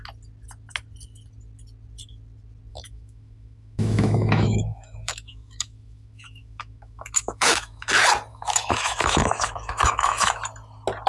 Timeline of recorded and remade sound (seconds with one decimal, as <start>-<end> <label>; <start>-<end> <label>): 0.0-2.7 recorded; 2.7-7.9 remade; 7.9-8.3 recorded; 8.3-10.4 remade; 10.4-11.1 recorded